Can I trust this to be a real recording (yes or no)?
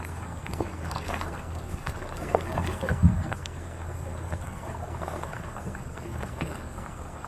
no